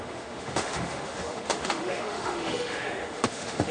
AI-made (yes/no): yes